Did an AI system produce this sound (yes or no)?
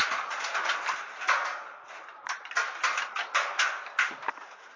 no